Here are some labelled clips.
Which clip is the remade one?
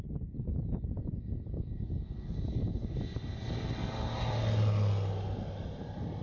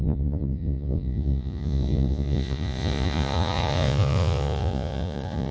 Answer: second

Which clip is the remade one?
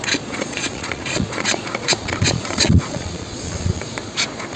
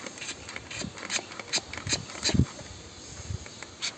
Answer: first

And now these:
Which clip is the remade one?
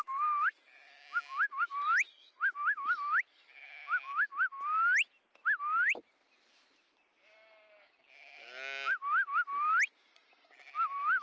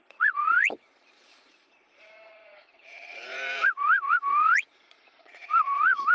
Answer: second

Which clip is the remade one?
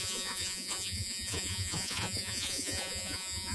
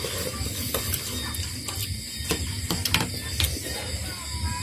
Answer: first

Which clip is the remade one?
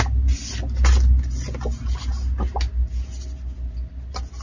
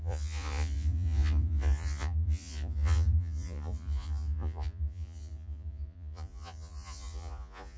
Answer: second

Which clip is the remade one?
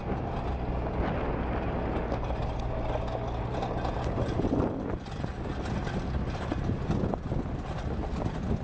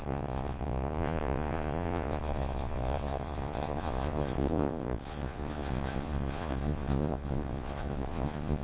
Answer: second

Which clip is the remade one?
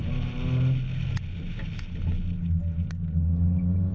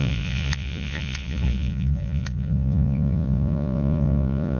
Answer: second